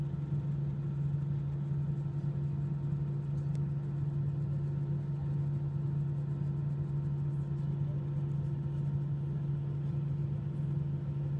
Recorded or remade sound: recorded